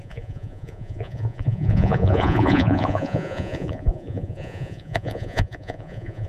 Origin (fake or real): fake